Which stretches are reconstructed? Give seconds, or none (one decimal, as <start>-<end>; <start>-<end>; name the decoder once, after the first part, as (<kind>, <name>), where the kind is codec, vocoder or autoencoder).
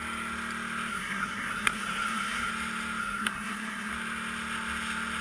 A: 0.9-2.5 (codec, SNAC); 3.0-3.9